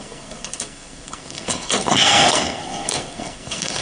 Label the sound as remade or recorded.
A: remade